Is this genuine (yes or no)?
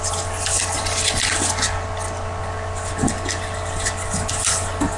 yes